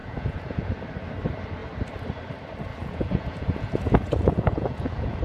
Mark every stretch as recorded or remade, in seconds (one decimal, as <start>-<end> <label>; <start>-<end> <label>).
0.0-0.7 remade; 0.7-2.7 recorded; 2.7-5.2 remade